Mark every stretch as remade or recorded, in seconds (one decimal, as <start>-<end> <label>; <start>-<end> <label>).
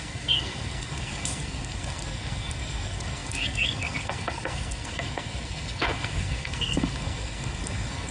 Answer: 0.0-8.1 remade